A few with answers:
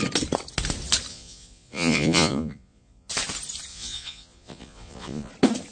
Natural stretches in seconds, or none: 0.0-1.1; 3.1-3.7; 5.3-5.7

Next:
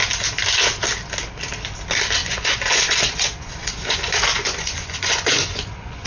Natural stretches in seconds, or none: 0.0-2.2

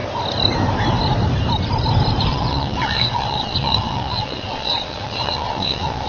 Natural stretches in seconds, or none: 0.0-2.3

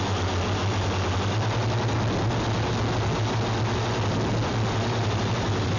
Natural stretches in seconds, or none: 0.0-4.5

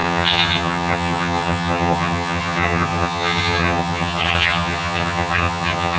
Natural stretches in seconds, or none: none

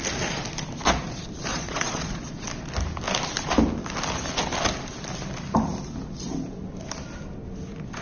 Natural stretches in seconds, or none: 0.0-1.5; 2.5-8.0